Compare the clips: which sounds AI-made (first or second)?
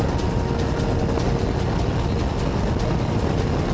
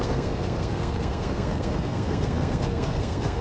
second